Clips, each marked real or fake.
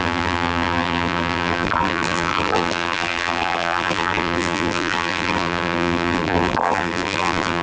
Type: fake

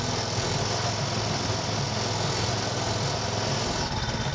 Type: real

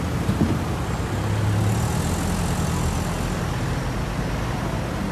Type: real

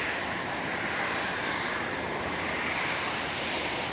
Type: fake